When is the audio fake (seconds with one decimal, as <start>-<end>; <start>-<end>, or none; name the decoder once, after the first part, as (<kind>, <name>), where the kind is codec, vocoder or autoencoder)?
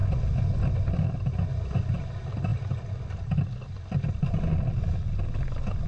none